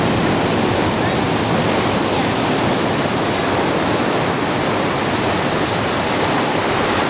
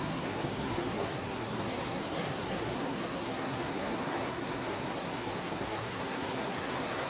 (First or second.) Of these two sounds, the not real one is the second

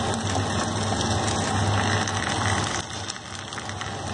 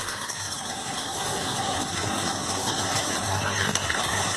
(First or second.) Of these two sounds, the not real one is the second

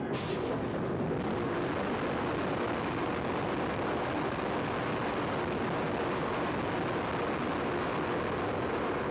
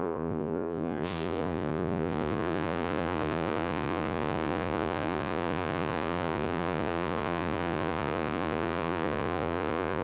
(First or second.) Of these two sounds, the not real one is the second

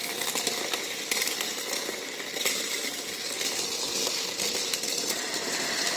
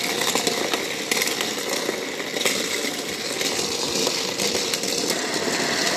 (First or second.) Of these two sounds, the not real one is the first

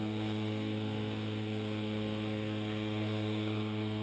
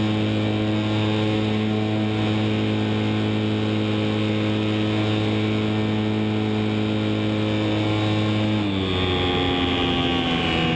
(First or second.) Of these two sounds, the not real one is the first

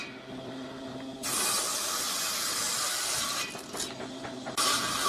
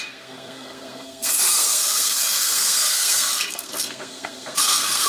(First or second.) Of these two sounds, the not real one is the second